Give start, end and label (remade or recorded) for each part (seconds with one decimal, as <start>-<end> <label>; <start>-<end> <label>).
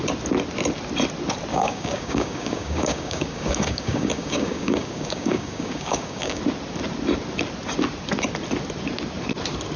0.0-1.5 recorded; 1.5-6.4 remade; 6.4-9.8 recorded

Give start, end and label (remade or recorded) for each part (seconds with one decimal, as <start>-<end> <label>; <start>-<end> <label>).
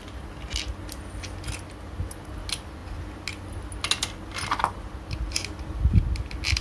0.0-6.6 recorded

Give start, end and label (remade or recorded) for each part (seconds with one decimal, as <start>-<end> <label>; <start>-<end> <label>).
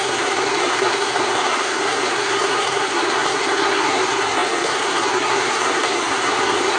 0.0-6.8 remade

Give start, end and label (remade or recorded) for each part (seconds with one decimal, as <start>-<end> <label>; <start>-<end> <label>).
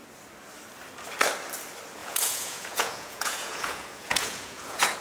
0.0-2.0 recorded; 2.0-5.0 remade